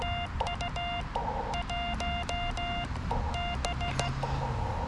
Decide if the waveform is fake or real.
real